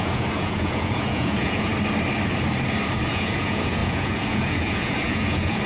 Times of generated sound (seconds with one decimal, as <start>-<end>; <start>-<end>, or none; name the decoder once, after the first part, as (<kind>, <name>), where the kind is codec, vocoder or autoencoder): 0.0-1.7 (vocoder, Vocos); 3.1-5.7